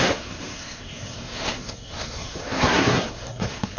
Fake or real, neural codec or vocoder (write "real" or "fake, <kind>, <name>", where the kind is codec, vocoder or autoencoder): fake, codec, SNAC